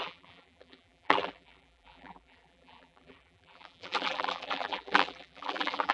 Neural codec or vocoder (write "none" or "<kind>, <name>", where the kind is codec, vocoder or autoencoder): vocoder, BigVGAN v2